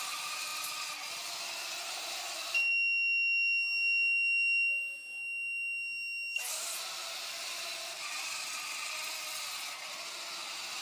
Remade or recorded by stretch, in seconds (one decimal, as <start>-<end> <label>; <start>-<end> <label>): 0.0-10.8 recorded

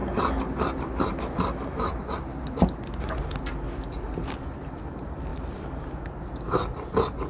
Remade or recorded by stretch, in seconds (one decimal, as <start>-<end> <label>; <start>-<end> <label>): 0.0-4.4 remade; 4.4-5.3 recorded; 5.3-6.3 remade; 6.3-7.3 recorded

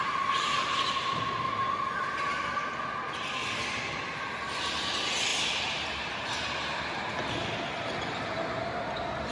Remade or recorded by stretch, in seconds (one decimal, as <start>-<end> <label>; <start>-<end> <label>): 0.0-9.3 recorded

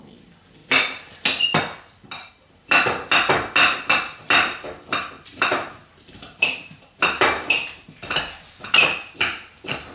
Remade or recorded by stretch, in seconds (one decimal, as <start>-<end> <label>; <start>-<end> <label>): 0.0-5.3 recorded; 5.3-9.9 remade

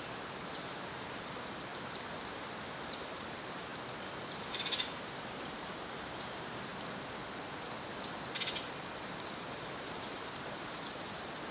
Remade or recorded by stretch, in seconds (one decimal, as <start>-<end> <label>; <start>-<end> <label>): 0.0-1.7 remade; 1.7-2.6 recorded; 2.6-3.7 remade; 3.7-4.3 recorded; 4.3-6.7 remade; 6.7-9.4 recorded; 9.4-11.5 remade

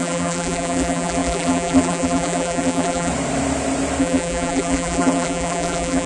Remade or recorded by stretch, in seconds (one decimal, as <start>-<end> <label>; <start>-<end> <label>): 0.0-3.1 remade; 3.1-4.0 recorded; 4.0-6.1 remade

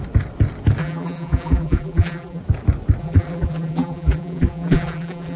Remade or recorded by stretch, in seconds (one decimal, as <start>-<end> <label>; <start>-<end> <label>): 0.0-0.8 recorded; 0.8-2.4 remade; 2.4-3.0 recorded; 3.0-5.4 remade

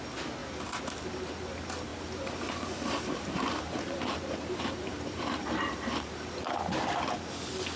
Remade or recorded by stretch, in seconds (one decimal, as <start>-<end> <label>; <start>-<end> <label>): 0.0-1.9 recorded; 1.9-6.5 remade; 6.5-7.8 recorded